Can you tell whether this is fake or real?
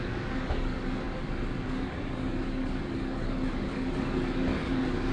fake